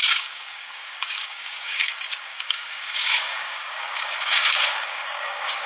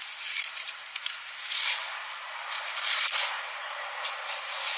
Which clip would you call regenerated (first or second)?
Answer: first